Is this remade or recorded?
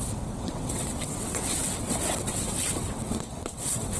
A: remade